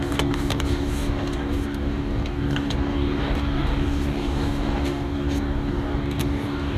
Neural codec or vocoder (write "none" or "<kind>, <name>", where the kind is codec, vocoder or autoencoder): codec, DAC